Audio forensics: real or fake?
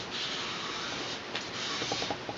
real